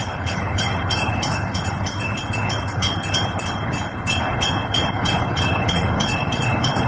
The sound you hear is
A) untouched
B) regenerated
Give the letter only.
B